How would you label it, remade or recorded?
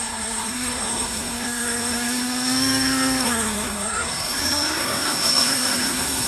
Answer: remade